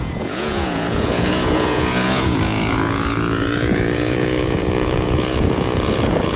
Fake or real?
fake